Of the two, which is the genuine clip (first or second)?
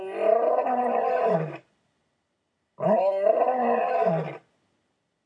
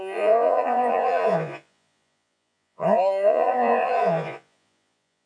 first